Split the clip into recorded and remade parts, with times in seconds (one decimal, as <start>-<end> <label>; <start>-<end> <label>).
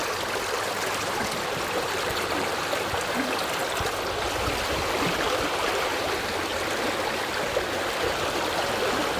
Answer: 0.0-0.8 recorded; 0.8-3.6 remade; 3.6-4.6 recorded; 4.6-6.5 remade; 6.5-7.3 recorded; 7.3-9.2 remade